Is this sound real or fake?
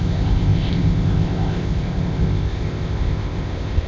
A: fake